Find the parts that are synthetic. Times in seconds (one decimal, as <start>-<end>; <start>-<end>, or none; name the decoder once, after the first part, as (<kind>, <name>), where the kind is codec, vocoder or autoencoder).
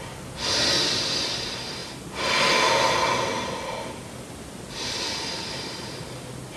none